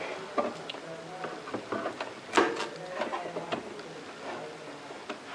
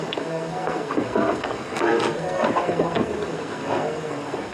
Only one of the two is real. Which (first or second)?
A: first